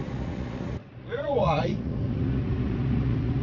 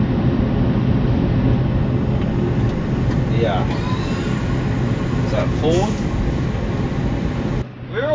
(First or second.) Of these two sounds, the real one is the second